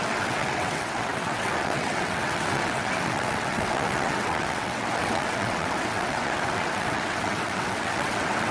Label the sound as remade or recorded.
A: remade